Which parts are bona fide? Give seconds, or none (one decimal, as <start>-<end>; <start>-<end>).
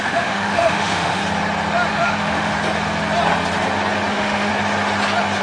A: 1.2-1.9; 2.5-4.1; 4.5-5.4